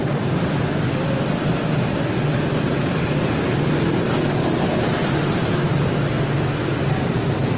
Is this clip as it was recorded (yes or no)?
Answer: yes